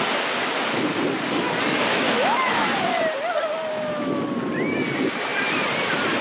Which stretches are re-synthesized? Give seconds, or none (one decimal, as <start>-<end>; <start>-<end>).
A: 1.9-2.7; 3.7-4.2